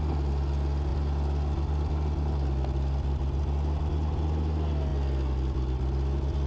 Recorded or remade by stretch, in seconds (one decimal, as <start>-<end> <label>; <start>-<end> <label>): 0.0-6.5 recorded

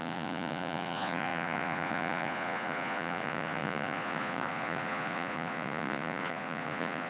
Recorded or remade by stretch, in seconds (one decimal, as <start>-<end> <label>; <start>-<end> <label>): 0.0-7.1 remade

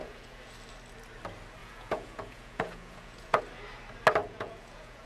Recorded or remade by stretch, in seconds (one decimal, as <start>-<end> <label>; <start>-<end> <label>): 0.0-0.5 remade; 0.5-1.6 recorded; 1.6-3.4 remade; 3.4-4.2 recorded; 4.2-5.1 remade

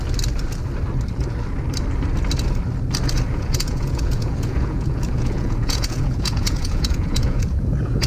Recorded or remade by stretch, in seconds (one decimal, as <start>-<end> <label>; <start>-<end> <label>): 0.0-3.3 recorded; 3.3-8.1 remade

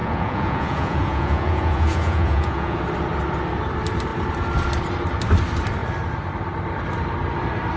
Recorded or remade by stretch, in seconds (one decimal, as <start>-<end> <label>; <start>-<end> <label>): 0.0-2.8 remade; 2.8-7.8 recorded

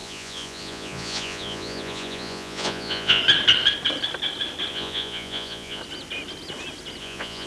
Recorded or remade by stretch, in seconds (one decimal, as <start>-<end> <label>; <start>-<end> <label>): 0.0-3.2 remade; 3.2-4.7 recorded; 4.7-5.8 remade; 5.8-7.0 recorded; 7.0-7.5 remade

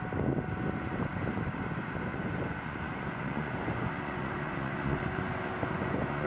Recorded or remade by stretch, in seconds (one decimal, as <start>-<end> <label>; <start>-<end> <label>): 0.0-2.1 recorded; 2.1-6.3 remade

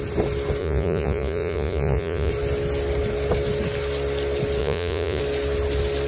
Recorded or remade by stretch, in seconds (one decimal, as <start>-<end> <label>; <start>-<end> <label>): 0.0-0.6 recorded; 0.6-2.3 remade; 2.3-4.6 recorded; 4.6-5.2 remade; 5.2-6.1 recorded